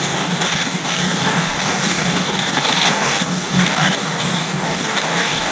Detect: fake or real fake